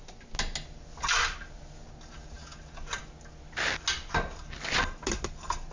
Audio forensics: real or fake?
real